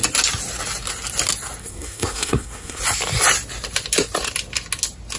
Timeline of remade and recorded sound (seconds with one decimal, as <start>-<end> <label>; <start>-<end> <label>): 0.0-1.6 recorded; 1.6-2.8 remade; 2.8-5.2 recorded